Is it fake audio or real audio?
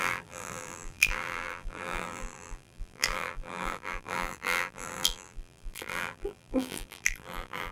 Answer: fake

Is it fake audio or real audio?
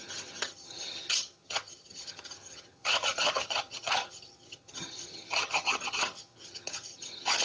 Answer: fake